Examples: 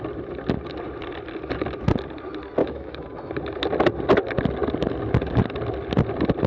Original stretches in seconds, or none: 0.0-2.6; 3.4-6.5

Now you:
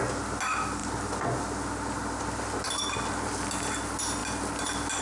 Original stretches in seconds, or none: 0.0-5.0

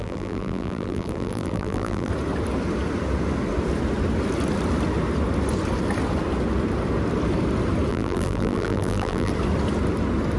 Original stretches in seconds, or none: 2.1-7.9; 9.3-10.4

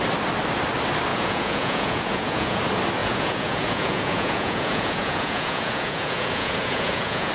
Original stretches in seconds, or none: 0.0-1.1; 2.6-3.0

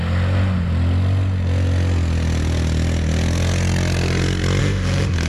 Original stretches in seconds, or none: 0.0-4.6

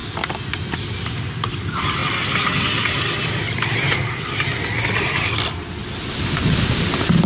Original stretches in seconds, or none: 0.0-1.4; 5.8-6.4